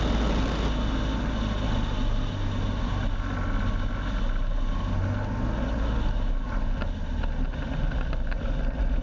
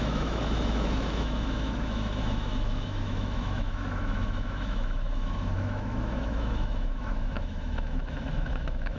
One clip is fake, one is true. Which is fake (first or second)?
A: second